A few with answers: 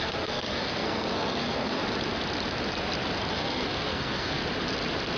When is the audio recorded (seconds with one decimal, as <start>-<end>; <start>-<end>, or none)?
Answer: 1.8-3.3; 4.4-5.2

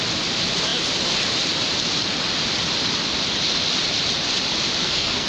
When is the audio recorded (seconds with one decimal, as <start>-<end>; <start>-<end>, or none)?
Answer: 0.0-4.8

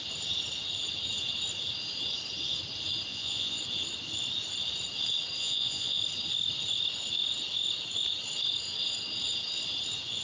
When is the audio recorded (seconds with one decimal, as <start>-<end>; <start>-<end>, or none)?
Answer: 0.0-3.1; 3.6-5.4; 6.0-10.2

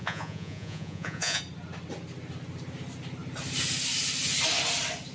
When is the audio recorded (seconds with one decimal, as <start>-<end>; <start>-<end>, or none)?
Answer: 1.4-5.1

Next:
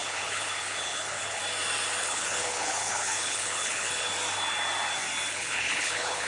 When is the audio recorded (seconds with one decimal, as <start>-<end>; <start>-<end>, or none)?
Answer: 1.4-2.0; 4.1-5.3

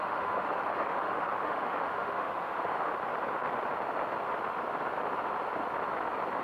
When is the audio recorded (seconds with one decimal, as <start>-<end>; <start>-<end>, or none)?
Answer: 2.9-6.4